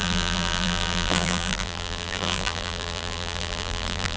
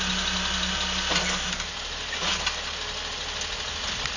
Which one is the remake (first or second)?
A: first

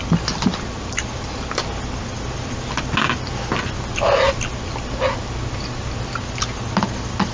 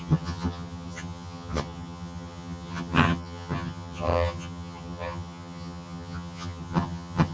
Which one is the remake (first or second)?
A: second